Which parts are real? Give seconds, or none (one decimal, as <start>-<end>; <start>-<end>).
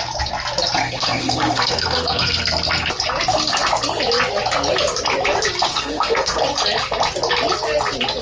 0.0-0.8; 2.4-5.7; 6.4-8.2